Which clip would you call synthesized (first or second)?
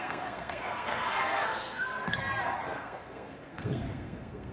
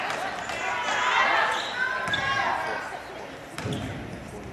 first